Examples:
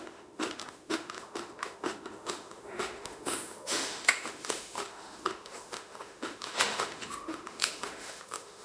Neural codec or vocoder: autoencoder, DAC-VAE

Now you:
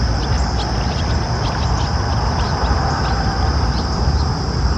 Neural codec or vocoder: none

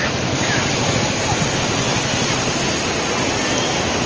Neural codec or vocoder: none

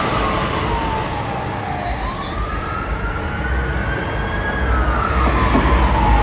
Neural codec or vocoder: none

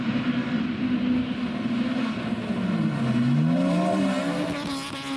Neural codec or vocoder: none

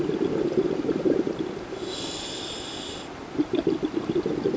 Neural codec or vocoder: none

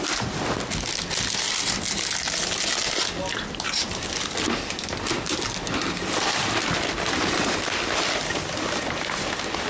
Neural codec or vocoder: none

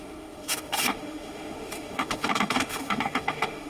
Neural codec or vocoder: autoencoder, DAC-VAE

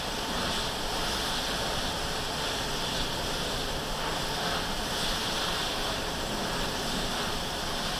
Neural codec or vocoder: none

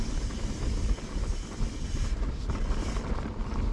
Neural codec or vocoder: none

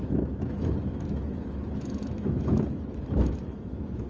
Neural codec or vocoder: autoencoder, DAC-VAE